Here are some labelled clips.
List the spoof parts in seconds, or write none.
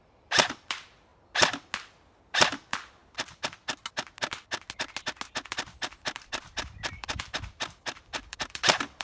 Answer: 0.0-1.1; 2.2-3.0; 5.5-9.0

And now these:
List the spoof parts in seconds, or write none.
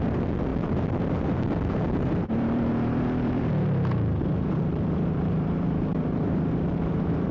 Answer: 0.0-7.3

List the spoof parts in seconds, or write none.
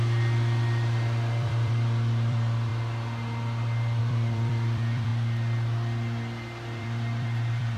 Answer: 0.0-2.7; 4.0-5.1; 6.8-7.8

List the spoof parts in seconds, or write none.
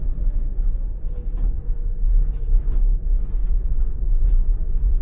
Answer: 0.4-1.0; 3.4-5.0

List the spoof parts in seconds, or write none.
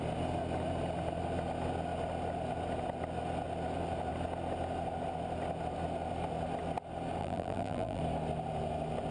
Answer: 7.2-8.0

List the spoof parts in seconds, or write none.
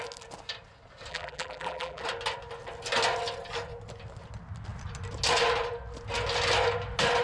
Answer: 1.1-2.0